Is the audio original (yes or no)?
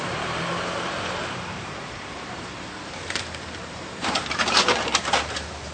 no